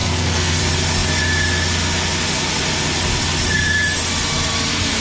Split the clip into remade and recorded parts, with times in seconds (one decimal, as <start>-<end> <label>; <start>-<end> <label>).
0.0-0.6 remade; 0.6-5.0 recorded